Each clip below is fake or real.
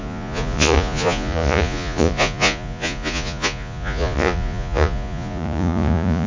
fake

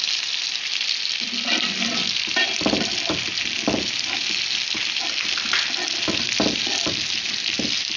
real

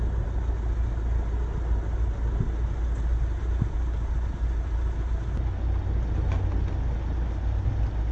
real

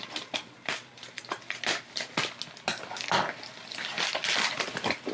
real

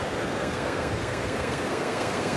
fake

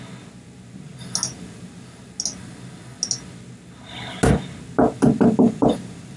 real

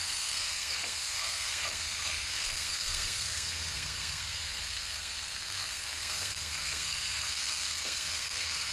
fake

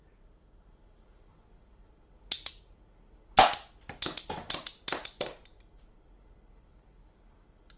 real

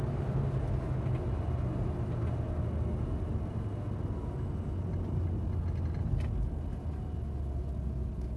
real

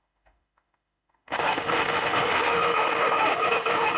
fake